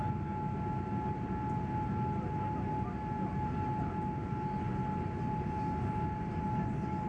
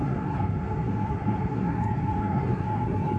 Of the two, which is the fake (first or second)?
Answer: second